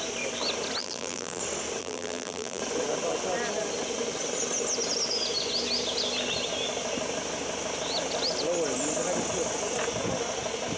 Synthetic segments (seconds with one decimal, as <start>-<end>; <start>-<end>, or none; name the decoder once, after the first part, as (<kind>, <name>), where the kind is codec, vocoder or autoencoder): 0.8-1.4 (vocoder, BigVGAN v2); 1.8-2.6